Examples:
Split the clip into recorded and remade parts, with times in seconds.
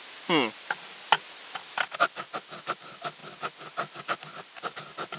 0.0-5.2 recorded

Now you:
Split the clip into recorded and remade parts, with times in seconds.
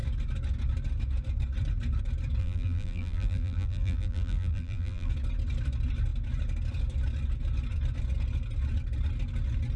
0.0-2.4 recorded; 2.4-5.1 remade; 5.1-9.8 recorded